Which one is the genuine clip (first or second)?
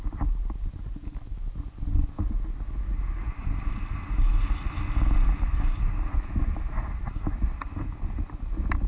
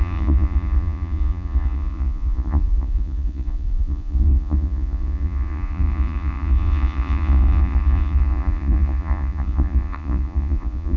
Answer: first